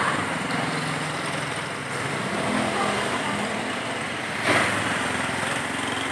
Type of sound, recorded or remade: recorded